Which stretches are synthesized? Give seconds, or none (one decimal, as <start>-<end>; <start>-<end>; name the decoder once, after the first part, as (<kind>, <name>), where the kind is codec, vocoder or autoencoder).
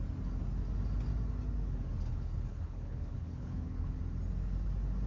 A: 2.1-4.0 (codec, HILCodec)